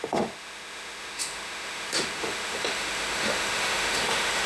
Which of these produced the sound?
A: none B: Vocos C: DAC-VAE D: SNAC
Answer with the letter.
C